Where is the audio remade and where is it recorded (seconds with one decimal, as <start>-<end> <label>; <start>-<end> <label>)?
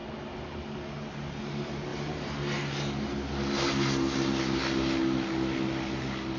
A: 0.0-6.4 recorded